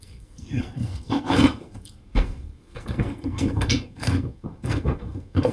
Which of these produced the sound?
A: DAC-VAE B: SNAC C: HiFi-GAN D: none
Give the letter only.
B